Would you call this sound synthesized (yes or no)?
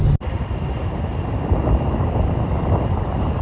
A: no